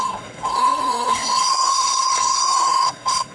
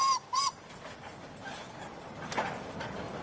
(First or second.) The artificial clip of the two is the first